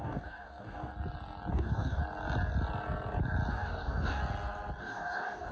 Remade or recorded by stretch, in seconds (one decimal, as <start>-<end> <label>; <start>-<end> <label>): 0.0-0.9 remade; 0.9-1.5 recorded; 1.5-2.0 remade; 2.0-3.5 recorded; 3.5-4.2 remade; 4.2-4.8 recorded; 4.8-5.5 remade